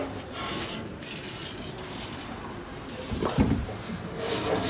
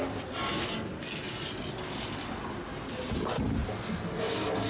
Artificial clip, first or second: first